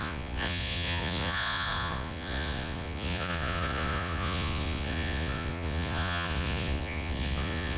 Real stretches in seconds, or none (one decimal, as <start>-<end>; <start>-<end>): none